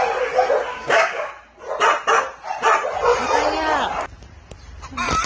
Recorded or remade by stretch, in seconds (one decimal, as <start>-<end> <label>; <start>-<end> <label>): 0.0-0.7 recorded; 0.7-1.3 remade; 1.3-5.3 recorded

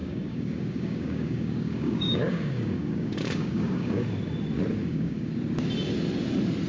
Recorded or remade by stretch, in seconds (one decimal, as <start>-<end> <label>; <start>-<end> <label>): 0.0-4.0 remade; 4.0-4.8 recorded; 4.8-5.3 remade; 5.3-6.7 recorded

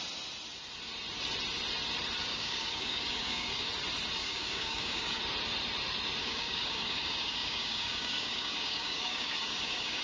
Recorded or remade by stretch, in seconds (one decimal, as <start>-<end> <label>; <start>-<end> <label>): 0.0-2.3 recorded; 2.3-3.7 remade; 3.7-4.2 recorded; 4.2-5.2 remade; 5.2-6.2 recorded; 6.2-10.0 remade

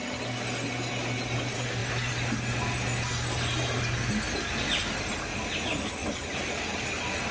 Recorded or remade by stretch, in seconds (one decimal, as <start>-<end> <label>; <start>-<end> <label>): 0.0-7.3 recorded

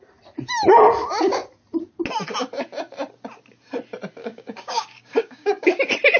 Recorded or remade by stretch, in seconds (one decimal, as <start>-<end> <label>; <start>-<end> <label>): 0.0-4.2 recorded; 4.2-5.8 remade; 5.8-6.2 recorded